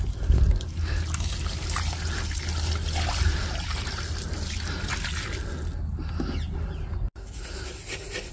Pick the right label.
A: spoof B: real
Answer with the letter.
B